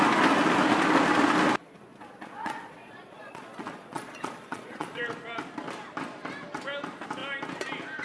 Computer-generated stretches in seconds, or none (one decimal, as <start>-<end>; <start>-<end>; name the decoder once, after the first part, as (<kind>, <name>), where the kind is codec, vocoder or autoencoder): 1.6-5.0 (vocoder, Vocos)